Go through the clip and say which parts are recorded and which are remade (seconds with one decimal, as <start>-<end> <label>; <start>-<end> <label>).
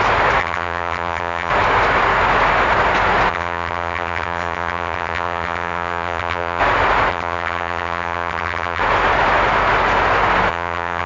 0.0-0.4 recorded; 0.4-1.5 remade; 1.5-3.3 recorded; 3.3-6.6 remade; 6.6-7.1 recorded; 7.1-8.8 remade; 8.8-10.5 recorded; 10.5-11.1 remade